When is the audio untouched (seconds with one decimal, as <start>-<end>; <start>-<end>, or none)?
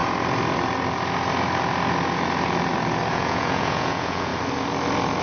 0.0-3.1; 4.3-5.2